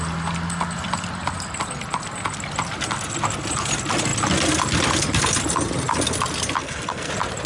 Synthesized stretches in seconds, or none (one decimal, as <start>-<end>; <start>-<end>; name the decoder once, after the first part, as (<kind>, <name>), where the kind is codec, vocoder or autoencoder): 6.6-7.1 (codec, SNAC)